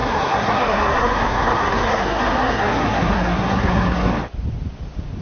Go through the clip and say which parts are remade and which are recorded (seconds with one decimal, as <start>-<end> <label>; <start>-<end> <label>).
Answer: 0.0-4.1 remade; 4.1-5.2 recorded